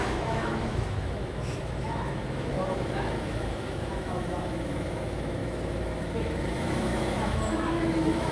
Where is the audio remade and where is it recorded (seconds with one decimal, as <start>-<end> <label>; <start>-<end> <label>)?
0.0-8.3 remade